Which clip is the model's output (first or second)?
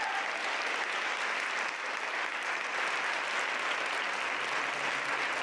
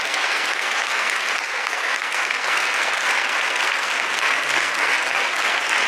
second